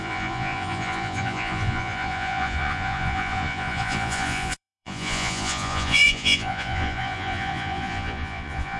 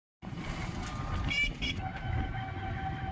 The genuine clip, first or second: second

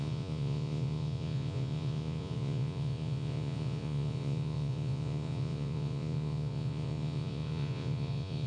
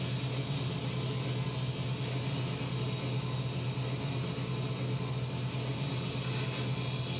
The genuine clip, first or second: second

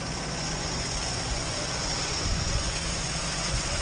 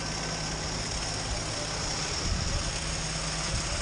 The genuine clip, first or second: second